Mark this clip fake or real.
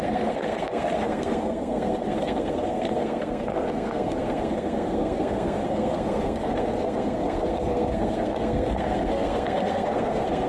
fake